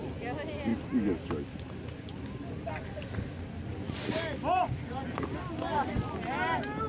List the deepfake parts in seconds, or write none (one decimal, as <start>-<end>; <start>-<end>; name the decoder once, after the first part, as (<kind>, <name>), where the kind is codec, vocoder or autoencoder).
none